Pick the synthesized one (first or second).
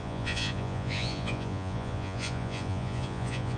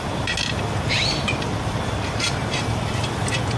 first